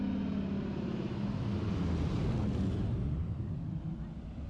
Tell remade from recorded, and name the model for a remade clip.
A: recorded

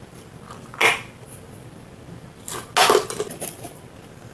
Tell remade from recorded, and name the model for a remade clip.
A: recorded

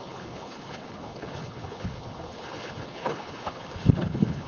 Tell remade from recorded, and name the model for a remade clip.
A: remade, codec, HILCodec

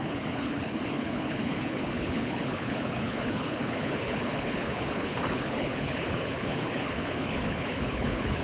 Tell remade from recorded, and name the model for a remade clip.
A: remade, codec, HILCodec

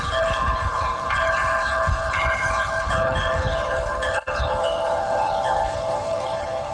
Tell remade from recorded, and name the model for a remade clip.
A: remade, codec, HILCodec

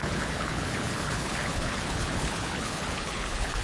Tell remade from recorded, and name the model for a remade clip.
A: remade, codec, HILCodec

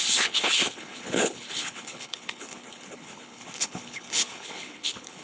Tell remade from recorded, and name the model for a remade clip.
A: remade, codec, HILCodec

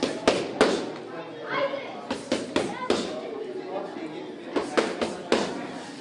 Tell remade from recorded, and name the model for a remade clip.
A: recorded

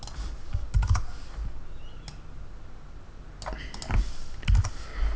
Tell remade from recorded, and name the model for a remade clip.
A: recorded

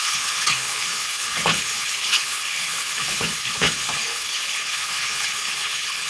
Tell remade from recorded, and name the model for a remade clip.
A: remade, codec, HILCodec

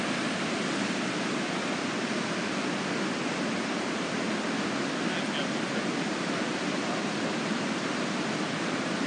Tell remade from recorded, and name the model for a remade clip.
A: recorded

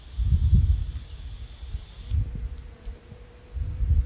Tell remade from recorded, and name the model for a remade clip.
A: recorded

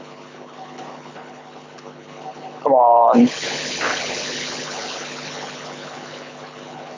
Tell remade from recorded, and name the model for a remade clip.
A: remade, codec, HILCodec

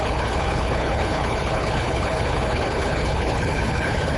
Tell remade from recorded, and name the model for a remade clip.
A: remade, codec, HILCodec